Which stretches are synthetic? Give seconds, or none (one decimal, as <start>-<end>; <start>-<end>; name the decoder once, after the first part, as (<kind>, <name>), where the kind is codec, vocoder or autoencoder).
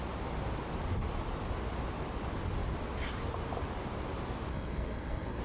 4.5-5.4 (codec, SNAC)